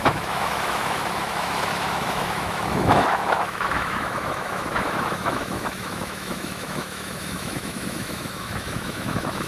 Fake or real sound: fake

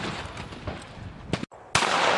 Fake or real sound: real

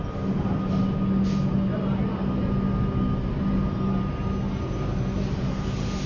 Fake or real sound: real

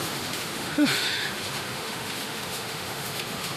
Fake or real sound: fake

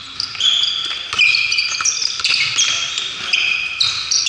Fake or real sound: real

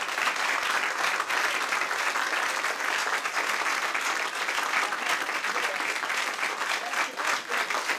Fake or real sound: real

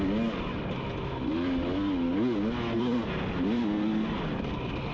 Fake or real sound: real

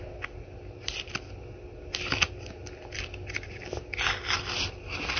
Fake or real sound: real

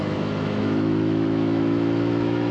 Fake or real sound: fake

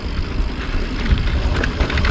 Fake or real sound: real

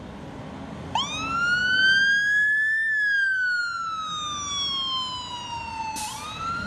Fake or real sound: real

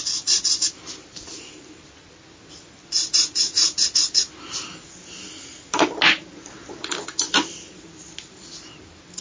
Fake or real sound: real